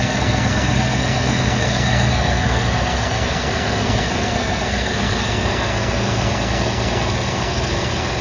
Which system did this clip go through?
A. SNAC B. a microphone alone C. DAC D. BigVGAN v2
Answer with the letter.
A